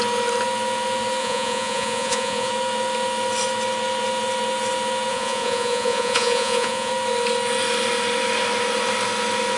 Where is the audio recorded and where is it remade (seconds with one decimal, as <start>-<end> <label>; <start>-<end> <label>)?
0.0-1.2 recorded; 1.2-2.5 remade; 2.5-5.1 recorded; 5.1-6.9 remade; 6.9-9.6 recorded